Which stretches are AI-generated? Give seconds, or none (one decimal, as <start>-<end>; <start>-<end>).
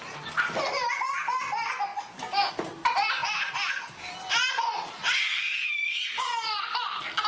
none